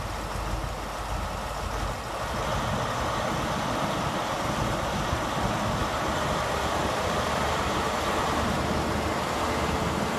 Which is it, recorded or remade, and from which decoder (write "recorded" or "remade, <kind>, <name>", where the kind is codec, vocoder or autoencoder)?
recorded